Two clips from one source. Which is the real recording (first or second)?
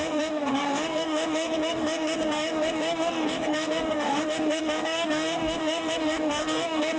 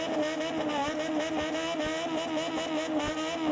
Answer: second